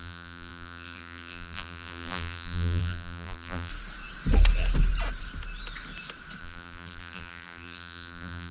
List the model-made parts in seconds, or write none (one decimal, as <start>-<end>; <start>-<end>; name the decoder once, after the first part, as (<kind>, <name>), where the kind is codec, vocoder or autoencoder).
0.0-3.7 (vocoder, BigVGAN v2); 6.4-8.5